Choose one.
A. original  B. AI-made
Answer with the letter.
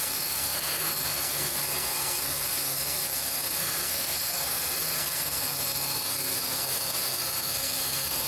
B